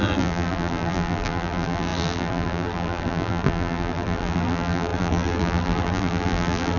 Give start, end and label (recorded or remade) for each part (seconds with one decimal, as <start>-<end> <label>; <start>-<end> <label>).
0.0-6.8 remade